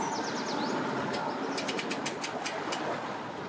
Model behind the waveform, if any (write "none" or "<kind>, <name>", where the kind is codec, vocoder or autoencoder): none